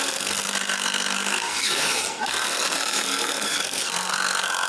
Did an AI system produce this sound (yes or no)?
yes